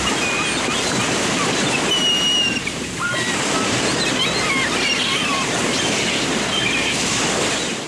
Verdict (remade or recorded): recorded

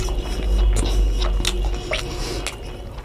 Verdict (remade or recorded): recorded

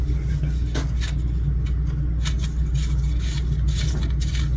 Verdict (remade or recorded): recorded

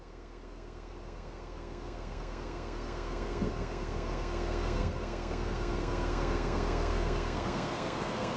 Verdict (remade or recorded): remade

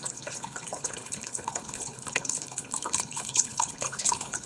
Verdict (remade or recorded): remade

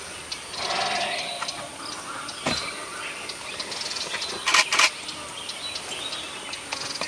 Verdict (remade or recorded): recorded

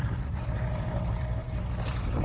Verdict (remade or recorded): remade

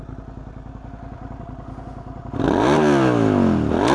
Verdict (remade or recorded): recorded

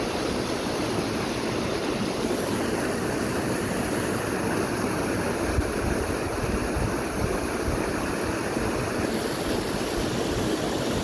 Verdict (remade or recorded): recorded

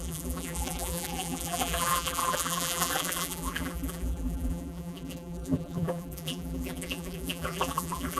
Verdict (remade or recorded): remade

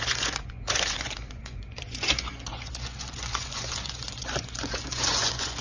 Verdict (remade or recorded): remade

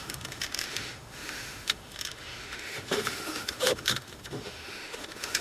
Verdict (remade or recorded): remade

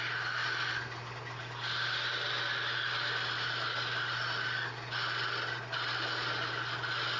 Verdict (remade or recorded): recorded